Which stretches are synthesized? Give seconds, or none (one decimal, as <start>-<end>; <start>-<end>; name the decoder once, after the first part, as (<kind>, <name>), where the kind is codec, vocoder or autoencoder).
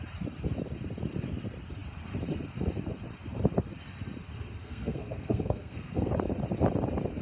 4.6-6.1 (codec, SNAC)